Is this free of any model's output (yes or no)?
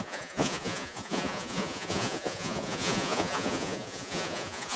no